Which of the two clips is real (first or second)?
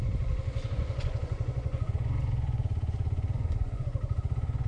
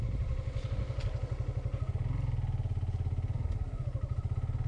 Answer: second